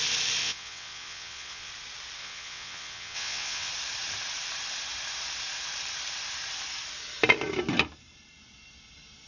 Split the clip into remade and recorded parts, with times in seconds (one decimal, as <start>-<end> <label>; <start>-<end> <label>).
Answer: 0.0-0.4 recorded; 0.4-1.7 remade; 1.7-2.2 recorded; 2.2-3.7 remade; 3.7-9.3 recorded